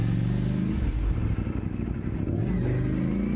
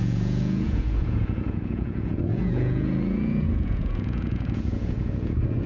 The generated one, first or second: second